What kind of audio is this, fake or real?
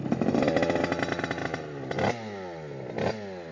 real